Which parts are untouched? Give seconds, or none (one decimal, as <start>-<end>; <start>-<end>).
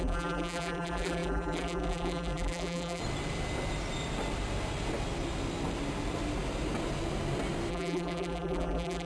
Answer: 3.0-7.7